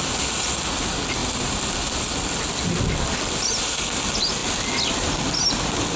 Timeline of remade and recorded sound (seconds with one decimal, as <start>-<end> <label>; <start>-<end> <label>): 0.0-6.0 recorded